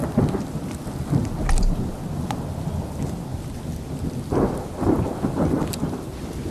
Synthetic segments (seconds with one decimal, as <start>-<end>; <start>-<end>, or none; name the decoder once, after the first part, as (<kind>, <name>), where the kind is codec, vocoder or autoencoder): 3.3-4.7 (vocoder, BigVGAN v2)